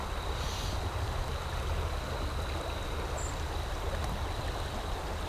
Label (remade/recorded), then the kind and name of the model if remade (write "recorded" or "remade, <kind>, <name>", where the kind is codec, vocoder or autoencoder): recorded